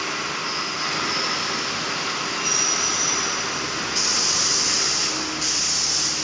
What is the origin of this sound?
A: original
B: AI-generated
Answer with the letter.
A